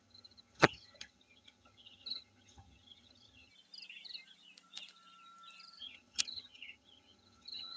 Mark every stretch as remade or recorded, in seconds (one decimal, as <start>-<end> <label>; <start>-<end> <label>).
0.0-3.5 remade; 3.5-5.8 recorded; 5.8-7.8 remade